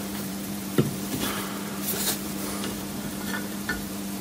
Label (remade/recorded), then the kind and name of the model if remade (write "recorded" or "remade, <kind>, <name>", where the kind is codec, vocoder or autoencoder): remade, vocoder, BigVGAN v2